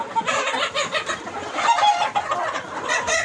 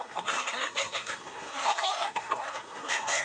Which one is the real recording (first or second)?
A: first